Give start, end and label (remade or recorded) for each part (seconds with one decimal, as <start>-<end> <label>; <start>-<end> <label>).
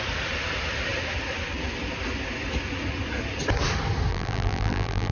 0.0-4.1 recorded; 4.1-5.1 remade